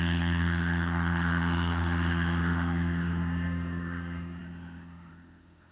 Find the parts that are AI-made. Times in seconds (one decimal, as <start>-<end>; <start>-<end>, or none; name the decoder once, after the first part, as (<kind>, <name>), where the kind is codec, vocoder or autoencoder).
0.0-5.7 (autoencoder, DAC-VAE)